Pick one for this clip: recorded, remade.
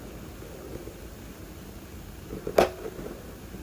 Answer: recorded